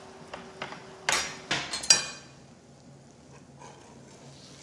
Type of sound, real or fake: real